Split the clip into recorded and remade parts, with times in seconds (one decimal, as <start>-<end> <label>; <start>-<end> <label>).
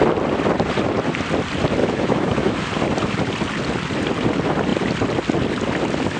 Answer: 0.0-1.8 recorded; 1.8-2.7 remade; 2.7-6.2 recorded